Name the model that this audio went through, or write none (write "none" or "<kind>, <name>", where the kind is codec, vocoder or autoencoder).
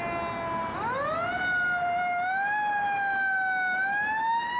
none